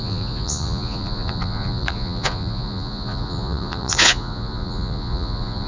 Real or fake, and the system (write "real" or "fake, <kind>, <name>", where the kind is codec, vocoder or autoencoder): fake, vocoder, Vocos